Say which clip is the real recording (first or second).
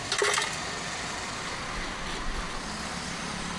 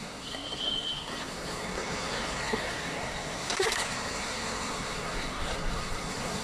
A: first